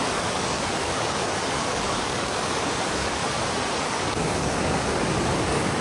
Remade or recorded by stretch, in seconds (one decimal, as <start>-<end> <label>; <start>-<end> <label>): 0.0-3.2 remade; 3.2-3.8 recorded; 3.8-5.8 remade